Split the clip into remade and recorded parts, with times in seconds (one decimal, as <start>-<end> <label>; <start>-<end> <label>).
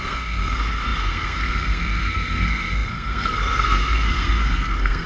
0.0-5.1 remade